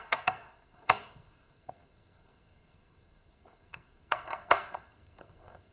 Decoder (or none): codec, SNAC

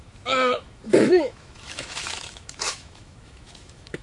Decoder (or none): autoencoder, DAC-VAE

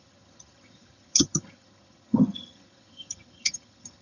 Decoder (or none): vocoder, HiFi-GAN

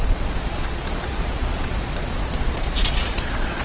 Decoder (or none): vocoder, Vocos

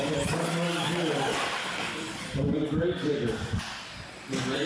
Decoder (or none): none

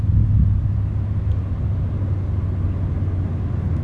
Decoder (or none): none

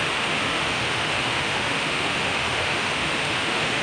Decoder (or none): autoencoder, DAC-VAE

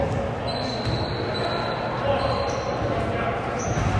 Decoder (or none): none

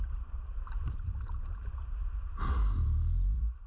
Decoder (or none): vocoder, BigVGAN v2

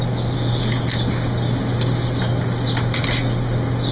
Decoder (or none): none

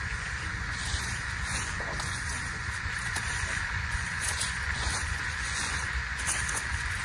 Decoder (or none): vocoder, Vocos